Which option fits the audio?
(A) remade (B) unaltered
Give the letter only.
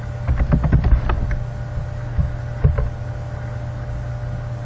B